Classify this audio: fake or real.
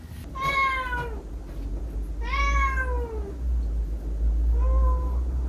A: real